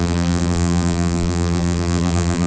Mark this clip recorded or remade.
remade